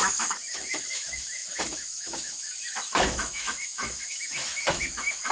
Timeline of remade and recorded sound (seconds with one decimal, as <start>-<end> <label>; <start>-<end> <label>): 0.0-5.3 remade